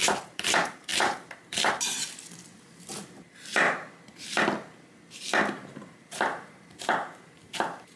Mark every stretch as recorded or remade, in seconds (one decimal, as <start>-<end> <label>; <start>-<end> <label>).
0.0-0.9 remade; 0.9-5.7 recorded; 5.7-8.0 remade